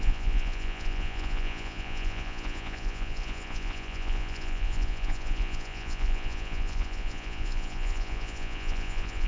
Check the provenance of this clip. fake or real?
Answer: fake